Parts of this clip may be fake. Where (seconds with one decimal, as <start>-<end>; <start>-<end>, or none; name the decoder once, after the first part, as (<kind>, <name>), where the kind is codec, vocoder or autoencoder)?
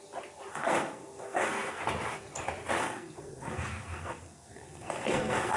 0.5-1.8 (codec, SNAC); 2.8-5.6